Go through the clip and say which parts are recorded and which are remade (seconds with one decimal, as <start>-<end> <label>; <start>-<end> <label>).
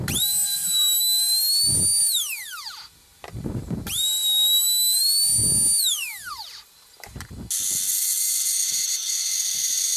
0.0-10.0 recorded